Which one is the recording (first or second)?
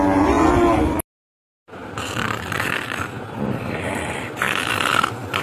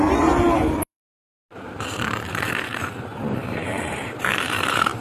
first